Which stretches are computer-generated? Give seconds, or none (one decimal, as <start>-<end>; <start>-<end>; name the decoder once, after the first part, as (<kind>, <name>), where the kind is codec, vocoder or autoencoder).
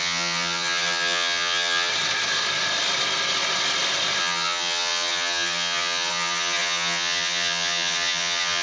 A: 0.0-1.9 (vocoder, HiFi-GAN); 4.2-8.6